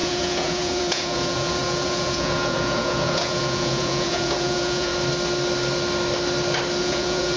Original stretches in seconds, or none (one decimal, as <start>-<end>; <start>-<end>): 4.9-6.8